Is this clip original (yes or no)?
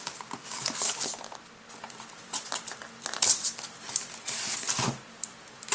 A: no